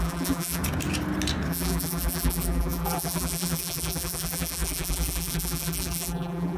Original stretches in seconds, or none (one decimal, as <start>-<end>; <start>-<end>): 0.6-1.5